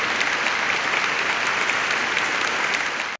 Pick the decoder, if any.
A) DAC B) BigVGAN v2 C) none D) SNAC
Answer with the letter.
C